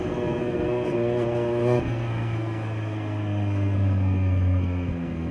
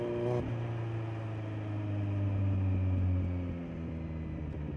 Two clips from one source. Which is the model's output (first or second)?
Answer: first